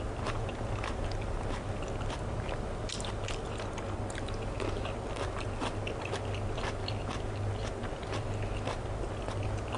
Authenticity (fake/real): real